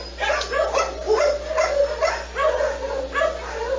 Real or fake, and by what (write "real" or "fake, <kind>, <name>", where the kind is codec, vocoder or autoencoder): real